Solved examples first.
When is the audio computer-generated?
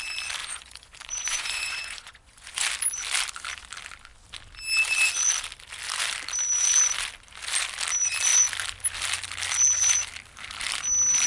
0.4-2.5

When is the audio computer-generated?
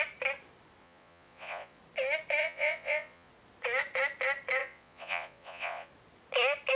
0.8-1.8; 2.4-3.3; 4.6-5.9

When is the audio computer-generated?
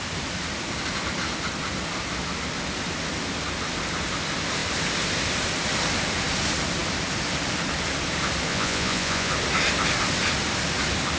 8.5-9.3